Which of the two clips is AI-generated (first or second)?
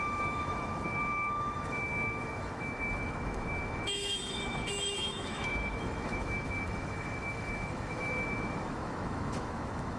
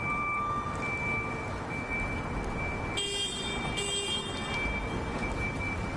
first